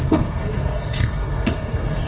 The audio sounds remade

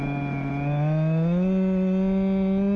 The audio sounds recorded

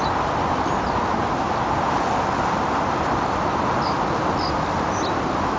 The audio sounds recorded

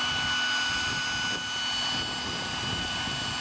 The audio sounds recorded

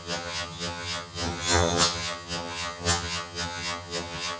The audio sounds remade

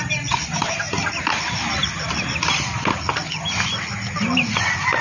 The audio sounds recorded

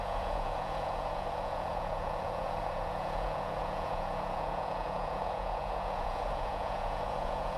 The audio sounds remade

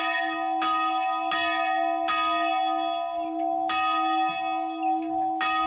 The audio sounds recorded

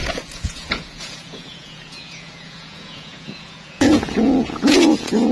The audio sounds remade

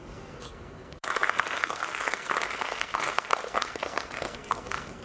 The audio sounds remade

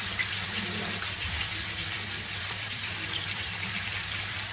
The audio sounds remade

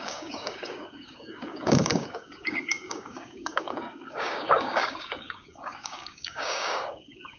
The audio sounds remade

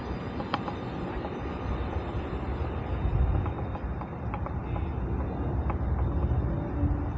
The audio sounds recorded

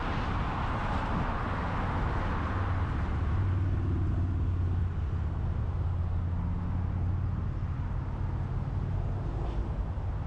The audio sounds recorded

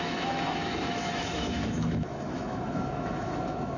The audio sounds remade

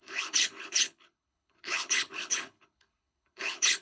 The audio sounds remade